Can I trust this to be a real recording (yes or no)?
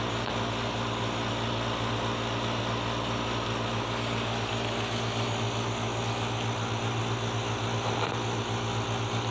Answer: yes